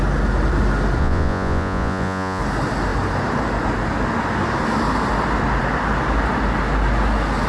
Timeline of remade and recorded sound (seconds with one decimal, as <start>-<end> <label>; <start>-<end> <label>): 0.0-1.0 recorded; 1.0-2.4 remade; 2.4-7.5 recorded